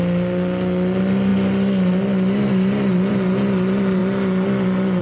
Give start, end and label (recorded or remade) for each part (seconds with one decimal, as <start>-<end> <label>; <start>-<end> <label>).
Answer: 0.0-5.0 recorded